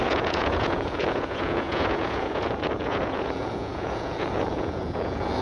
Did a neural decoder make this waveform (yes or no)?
yes